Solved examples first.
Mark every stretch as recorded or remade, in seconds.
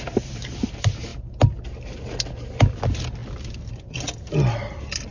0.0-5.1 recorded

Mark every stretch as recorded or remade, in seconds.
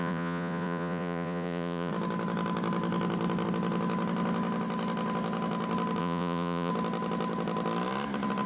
0.0-1.9 remade; 1.9-6.0 recorded; 6.0-6.7 remade; 6.7-8.5 recorded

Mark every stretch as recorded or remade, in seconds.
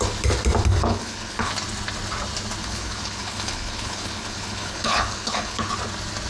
0.0-0.8 recorded; 0.8-1.5 remade; 1.5-2.6 recorded; 2.6-5.7 remade; 5.7-6.3 recorded